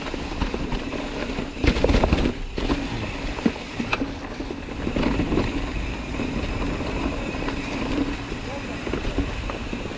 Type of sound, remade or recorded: recorded